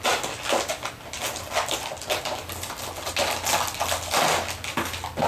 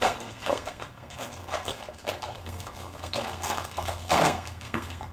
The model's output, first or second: second